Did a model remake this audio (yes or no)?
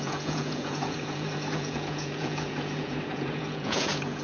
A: yes